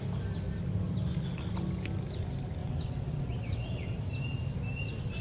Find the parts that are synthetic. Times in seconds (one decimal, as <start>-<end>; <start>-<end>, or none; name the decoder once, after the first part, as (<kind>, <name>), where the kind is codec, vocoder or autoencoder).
2.6-4.0 (vocoder, WaveNeXt)